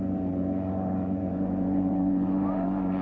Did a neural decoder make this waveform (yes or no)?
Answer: yes